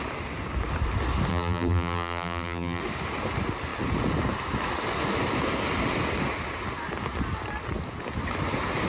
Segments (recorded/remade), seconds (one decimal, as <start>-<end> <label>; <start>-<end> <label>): 0.0-1.3 recorded; 1.3-2.8 remade; 2.8-8.9 recorded